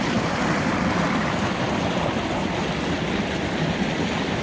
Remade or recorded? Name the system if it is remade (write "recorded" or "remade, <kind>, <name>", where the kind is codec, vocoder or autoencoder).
recorded